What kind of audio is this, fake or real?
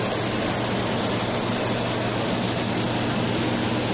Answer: real